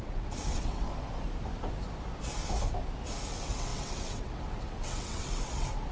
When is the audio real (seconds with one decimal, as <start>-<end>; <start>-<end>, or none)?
0.9-3.3